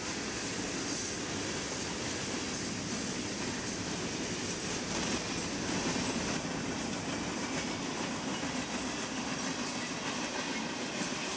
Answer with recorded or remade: recorded